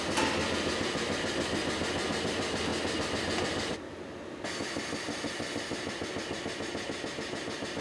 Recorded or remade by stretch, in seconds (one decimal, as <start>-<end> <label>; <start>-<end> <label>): 0.0-7.8 recorded